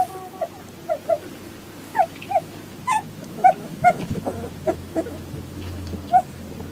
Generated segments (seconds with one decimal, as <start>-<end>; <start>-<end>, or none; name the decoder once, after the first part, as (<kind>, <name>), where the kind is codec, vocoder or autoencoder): 1.9-5.9 (autoencoder, DAC-VAE)